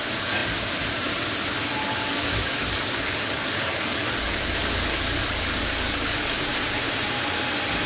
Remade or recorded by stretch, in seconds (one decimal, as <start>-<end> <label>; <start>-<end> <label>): 0.0-1.8 recorded; 1.8-6.5 remade; 6.5-7.9 recorded